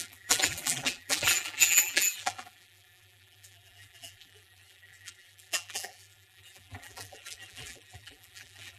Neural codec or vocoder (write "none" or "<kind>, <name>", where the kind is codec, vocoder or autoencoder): vocoder, BigVGAN v2